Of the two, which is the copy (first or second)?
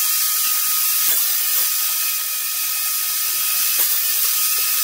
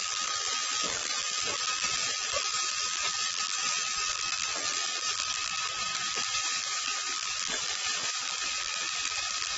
second